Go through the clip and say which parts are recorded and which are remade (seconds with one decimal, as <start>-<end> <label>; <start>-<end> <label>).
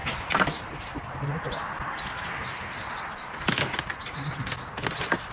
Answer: 0.0-5.3 recorded